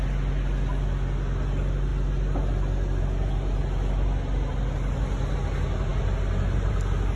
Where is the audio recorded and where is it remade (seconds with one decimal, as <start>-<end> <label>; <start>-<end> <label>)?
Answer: 0.0-7.2 recorded